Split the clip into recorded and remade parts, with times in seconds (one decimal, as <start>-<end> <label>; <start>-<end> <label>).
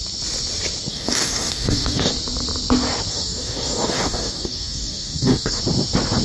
0.0-0.9 recorded; 0.9-2.1 remade; 2.1-3.1 recorded; 3.1-5.6 remade; 5.6-6.2 recorded